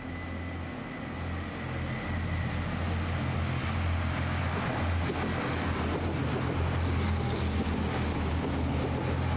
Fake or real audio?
real